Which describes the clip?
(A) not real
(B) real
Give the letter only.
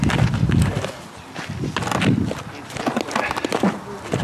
B